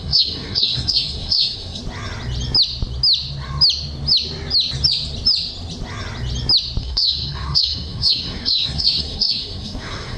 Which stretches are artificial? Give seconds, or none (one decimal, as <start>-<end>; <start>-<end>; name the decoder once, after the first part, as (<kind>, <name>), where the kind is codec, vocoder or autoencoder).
0.0-1.8 (codec, SNAC); 6.8-10.2